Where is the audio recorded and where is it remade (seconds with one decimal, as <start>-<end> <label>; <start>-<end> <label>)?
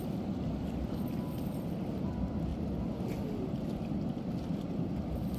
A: 0.0-2.5 recorded; 2.5-3.3 remade; 3.3-5.4 recorded